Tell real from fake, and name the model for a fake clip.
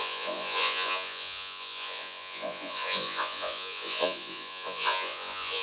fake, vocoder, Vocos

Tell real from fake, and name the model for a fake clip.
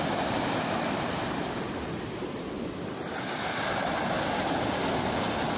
fake, vocoder, BigVGAN v2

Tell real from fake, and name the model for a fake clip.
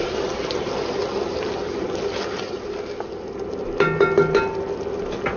real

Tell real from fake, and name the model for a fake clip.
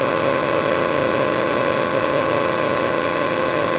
fake, vocoder, HiFi-GAN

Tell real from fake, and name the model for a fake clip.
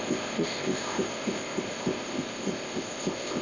fake, codec, ZipCodec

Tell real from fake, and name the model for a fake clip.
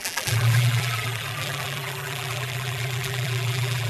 fake, vocoder, BigVGAN v2